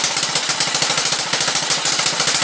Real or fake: real